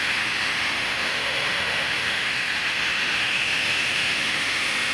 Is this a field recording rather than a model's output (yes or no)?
no